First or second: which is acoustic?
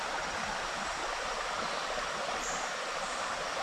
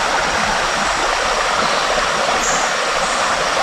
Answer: second